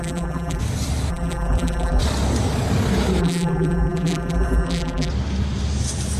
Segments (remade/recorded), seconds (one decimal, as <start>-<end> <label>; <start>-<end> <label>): 0.0-0.6 remade; 0.6-1.1 recorded; 1.1-2.0 remade; 2.0-3.2 recorded; 3.2-5.1 remade; 5.1-6.2 recorded